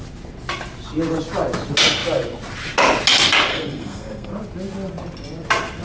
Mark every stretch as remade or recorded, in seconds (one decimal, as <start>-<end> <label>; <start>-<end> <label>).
0.0-3.5 recorded; 3.5-4.3 remade; 4.3-5.8 recorded

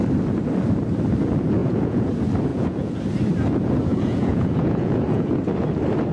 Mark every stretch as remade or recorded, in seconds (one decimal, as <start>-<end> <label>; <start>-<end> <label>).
0.0-1.6 recorded; 1.6-2.1 remade; 2.1-2.5 recorded; 2.5-3.0 remade; 3.0-3.9 recorded; 3.9-5.3 remade; 5.3-6.1 recorded